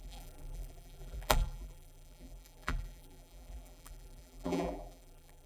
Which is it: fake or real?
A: fake